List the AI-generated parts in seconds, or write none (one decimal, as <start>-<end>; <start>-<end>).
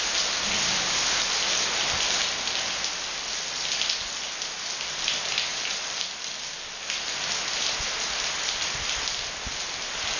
5.5-6.1